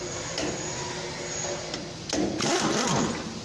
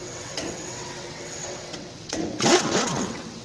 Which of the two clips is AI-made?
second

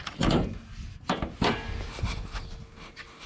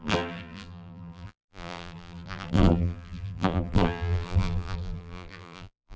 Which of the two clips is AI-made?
second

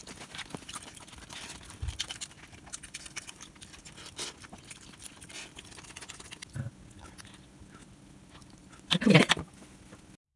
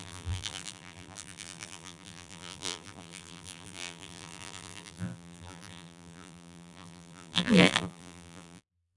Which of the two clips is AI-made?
second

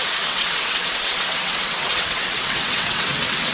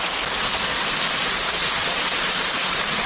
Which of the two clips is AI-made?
first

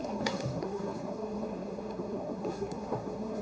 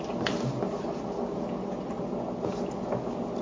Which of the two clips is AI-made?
first